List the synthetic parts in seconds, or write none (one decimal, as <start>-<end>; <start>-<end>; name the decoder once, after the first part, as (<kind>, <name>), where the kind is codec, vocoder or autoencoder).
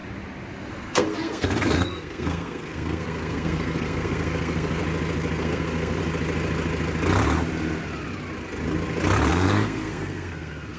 0.7-4.8 (codec, SNAC); 5.4-6.0; 9.3-10.8